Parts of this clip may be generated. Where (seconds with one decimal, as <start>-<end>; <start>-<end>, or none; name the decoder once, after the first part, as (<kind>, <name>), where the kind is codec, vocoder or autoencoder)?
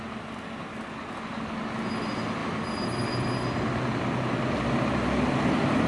none